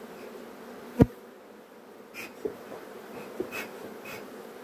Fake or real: real